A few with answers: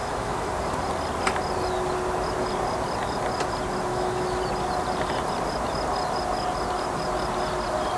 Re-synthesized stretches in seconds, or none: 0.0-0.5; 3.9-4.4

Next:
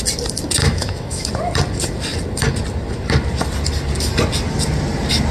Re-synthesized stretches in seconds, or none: 0.6-1.3

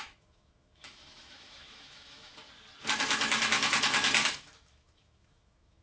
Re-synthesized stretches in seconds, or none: 0.0-2.3; 4.3-5.8

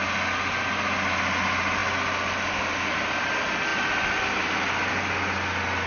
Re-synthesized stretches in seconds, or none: none

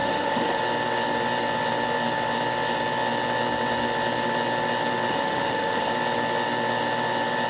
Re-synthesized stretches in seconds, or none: 0.0-0.6; 5.1-5.9

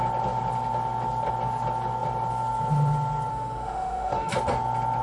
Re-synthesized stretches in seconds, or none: 3.3-4.3